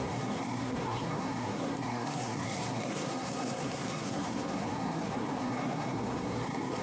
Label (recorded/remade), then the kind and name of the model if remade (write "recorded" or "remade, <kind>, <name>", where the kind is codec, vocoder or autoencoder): remade, codec, SNAC